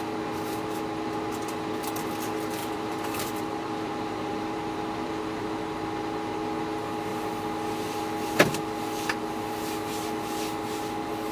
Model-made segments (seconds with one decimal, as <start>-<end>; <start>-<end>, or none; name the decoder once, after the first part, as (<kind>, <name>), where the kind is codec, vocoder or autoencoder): 2.6-5.4 (vocoder, BigVGAN v2)